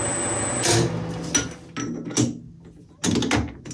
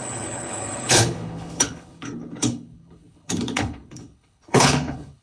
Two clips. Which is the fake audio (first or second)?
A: second